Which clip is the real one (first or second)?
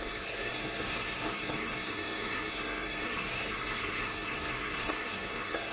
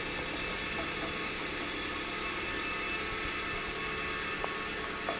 second